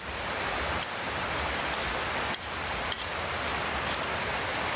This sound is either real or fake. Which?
fake